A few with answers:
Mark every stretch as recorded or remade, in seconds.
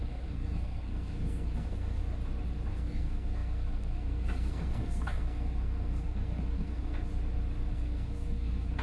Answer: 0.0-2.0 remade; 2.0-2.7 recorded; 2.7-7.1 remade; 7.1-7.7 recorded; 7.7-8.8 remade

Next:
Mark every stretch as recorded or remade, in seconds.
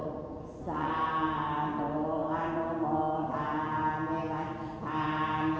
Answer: 0.0-0.9 remade; 0.9-5.6 recorded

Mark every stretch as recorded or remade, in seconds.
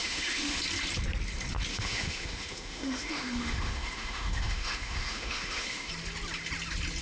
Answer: 0.0-0.6 remade; 0.6-1.7 recorded; 1.7-5.9 remade; 5.9-7.0 recorded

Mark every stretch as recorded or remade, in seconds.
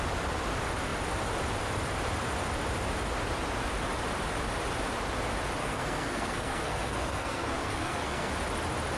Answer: 0.0-5.6 recorded; 5.6-8.3 remade; 8.3-9.0 recorded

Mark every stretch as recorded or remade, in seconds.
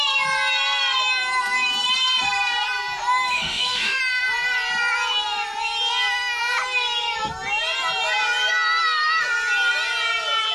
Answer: 0.0-3.3 recorded; 3.3-4.0 remade; 4.0-10.5 recorded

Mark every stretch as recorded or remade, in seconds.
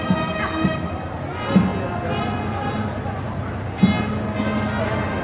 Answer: 0.0-5.2 recorded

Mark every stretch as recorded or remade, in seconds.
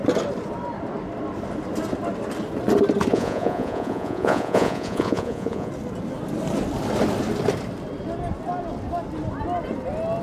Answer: 0.0-3.1 recorded; 3.1-5.7 remade; 5.7-10.2 recorded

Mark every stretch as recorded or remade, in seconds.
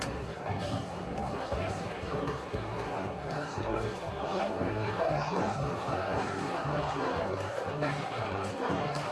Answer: 0.0-9.1 remade